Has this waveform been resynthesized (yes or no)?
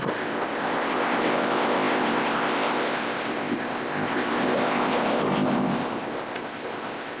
yes